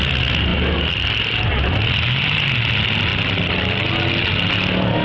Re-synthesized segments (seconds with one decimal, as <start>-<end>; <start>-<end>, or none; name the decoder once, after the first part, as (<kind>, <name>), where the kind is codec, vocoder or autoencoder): 0.5-1.6 (vocoder, BigVGAN v2); 3.1-3.9